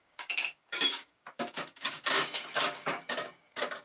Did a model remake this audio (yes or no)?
yes